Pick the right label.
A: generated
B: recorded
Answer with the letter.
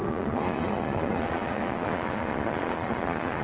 A